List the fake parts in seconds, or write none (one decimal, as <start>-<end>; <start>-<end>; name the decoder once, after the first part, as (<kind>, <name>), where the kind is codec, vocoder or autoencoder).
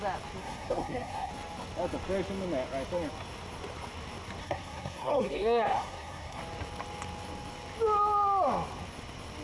0.4-1.3 (codec, SNAC); 4.4-6.4